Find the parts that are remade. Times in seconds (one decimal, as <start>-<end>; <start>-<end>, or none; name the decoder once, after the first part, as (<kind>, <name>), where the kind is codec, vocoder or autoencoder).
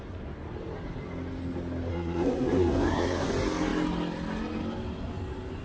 1.9-3.3 (codec, SNAC)